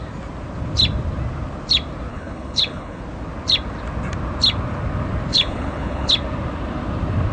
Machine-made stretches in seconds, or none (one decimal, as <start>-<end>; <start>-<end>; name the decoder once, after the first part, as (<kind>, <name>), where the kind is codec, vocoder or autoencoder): 2.1-3.0 (codec, HILCodec); 5.3-6.1